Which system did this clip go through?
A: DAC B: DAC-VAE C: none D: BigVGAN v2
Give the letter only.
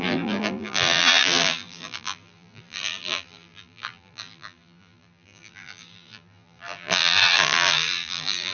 D